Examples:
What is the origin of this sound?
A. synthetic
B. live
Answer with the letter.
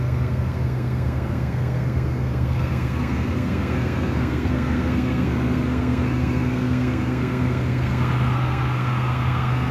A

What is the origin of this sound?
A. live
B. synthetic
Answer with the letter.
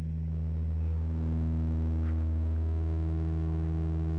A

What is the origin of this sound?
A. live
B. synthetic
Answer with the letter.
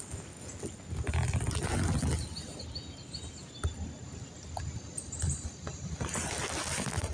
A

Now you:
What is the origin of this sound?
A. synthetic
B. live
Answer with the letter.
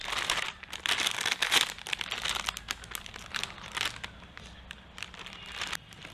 B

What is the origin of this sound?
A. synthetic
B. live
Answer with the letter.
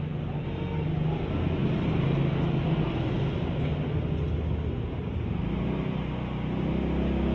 B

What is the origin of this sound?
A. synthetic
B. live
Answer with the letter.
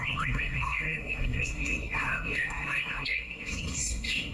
A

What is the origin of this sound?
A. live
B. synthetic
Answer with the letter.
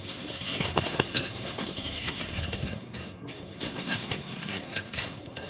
B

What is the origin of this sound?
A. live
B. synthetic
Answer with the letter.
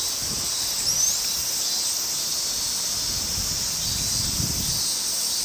A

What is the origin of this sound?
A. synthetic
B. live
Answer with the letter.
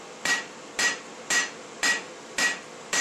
B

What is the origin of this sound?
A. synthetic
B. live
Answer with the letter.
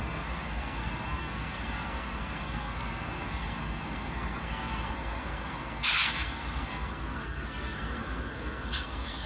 A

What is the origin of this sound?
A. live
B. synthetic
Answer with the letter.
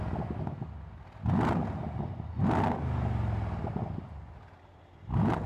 A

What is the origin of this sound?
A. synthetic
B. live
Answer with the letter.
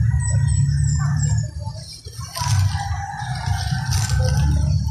B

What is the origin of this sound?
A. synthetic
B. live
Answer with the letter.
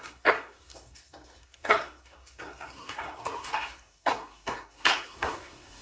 A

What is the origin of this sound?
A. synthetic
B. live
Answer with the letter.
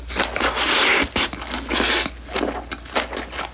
B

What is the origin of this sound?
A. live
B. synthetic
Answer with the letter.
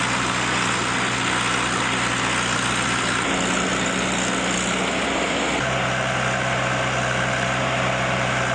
A